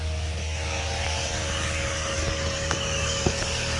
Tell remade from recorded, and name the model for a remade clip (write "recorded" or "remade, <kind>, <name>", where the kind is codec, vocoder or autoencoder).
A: remade, codec, DAC